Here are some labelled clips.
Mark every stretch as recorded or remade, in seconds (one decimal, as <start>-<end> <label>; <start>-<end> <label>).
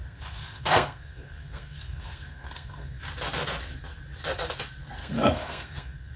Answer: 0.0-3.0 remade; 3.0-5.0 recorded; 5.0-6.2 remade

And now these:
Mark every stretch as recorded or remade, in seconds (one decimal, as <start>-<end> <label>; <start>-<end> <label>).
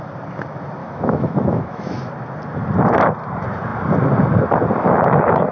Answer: 0.0-0.8 recorded; 0.8-2.0 remade; 2.0-5.5 recorded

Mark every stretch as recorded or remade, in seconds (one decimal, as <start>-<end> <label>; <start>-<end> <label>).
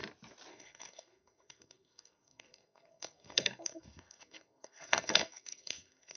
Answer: 0.0-0.5 recorded; 0.5-6.2 remade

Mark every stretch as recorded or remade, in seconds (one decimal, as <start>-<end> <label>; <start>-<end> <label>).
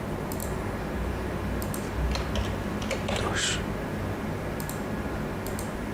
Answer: 0.0-5.9 recorded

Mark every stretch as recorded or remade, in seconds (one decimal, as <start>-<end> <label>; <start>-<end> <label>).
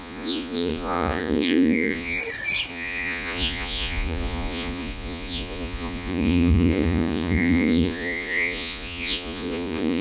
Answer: 0.0-2.2 remade; 2.2-2.7 recorded; 2.7-10.0 remade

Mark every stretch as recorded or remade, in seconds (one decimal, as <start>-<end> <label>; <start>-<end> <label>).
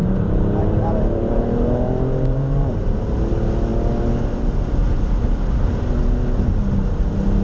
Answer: 0.0-3.3 remade; 3.3-7.4 recorded